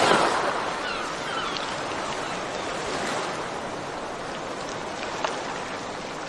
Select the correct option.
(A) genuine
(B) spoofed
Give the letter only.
A